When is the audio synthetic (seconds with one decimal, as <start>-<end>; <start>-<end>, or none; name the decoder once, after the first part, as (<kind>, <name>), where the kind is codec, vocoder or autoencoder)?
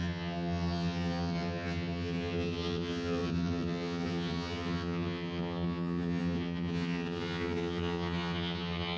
0.0-9.0 (vocoder, HiFi-GAN)